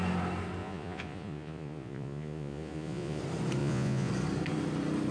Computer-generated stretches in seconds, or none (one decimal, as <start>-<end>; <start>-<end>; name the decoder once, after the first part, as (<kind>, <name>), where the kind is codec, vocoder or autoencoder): 0.6-3.2 (vocoder, Vocos); 3.6-4.1